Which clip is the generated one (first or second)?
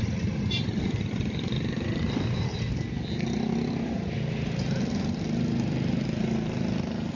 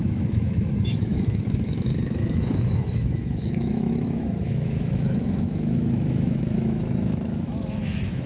second